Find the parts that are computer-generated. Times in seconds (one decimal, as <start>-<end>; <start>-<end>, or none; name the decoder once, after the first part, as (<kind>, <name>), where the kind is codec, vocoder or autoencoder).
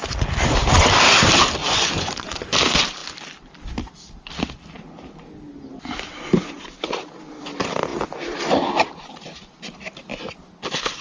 1.6-2.4 (vocoder, Vocos)